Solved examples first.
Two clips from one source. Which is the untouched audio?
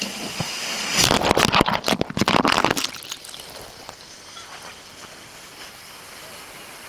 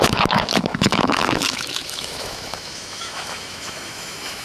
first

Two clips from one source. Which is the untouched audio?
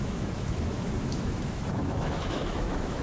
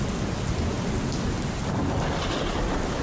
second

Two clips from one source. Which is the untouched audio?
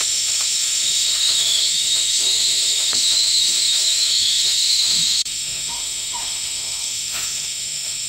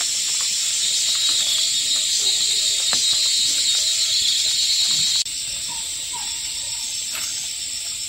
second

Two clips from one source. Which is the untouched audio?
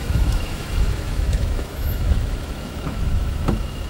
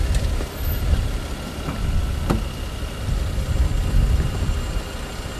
second